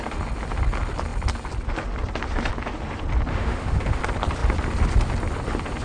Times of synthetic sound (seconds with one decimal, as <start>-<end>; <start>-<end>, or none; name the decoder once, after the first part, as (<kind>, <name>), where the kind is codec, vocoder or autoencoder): 3.3-4.0 (autoencoder, DAC-VAE)